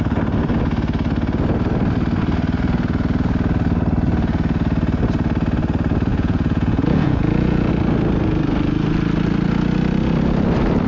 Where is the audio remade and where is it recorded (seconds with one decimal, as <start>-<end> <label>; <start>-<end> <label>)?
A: 0.0-6.1 recorded; 6.1-7.7 remade; 7.7-10.9 recorded